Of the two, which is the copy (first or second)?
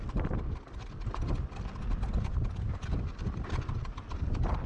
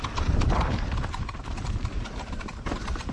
second